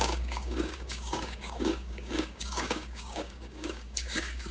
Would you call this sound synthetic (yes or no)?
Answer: yes